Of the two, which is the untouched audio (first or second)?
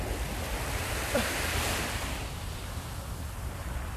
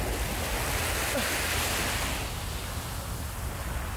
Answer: second